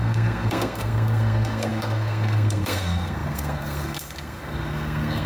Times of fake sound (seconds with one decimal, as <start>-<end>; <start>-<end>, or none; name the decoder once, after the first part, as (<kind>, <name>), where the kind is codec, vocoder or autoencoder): 0.0-5.3 (codec, SNAC)